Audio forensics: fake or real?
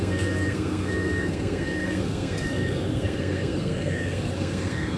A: fake